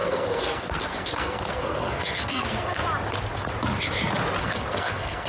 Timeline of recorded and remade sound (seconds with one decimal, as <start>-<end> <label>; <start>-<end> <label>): 0.0-2.8 remade; 2.8-4.4 recorded; 4.4-5.3 remade